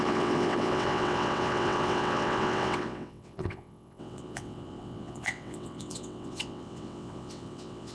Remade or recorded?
remade